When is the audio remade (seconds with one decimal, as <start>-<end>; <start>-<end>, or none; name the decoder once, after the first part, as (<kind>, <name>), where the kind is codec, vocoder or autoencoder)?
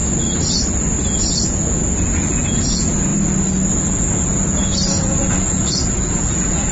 1.3-3.1 (vocoder, Vocos); 3.9-6.7